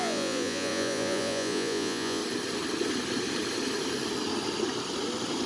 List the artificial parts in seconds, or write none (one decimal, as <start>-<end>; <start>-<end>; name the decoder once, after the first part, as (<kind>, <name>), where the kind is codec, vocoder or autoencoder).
0.0-2.2 (vocoder, Vocos)